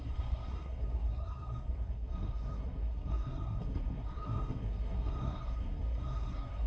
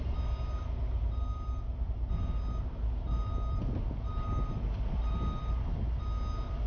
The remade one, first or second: first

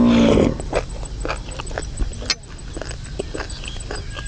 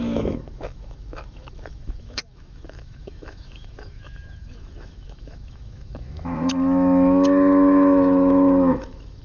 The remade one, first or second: second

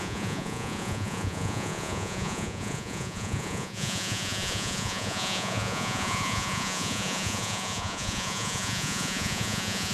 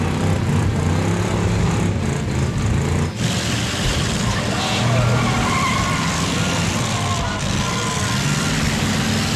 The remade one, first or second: first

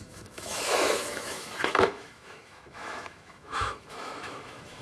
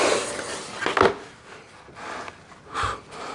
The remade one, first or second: first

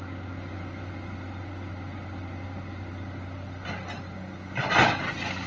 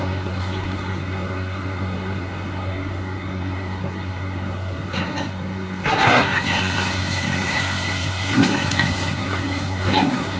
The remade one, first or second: second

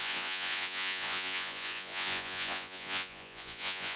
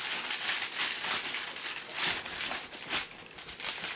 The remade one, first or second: first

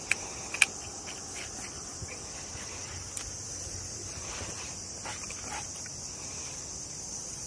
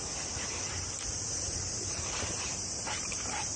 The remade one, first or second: second